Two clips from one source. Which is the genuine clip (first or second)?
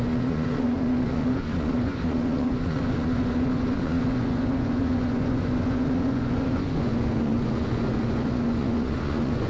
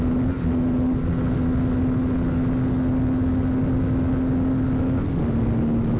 second